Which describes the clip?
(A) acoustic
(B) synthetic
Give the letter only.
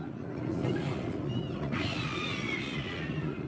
B